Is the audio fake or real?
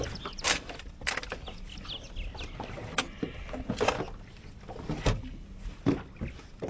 real